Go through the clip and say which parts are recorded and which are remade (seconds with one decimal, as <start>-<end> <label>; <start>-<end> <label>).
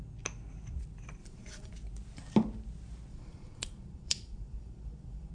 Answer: 0.0-1.2 recorded; 1.2-1.7 remade; 1.7-3.1 recorded; 3.1-5.3 remade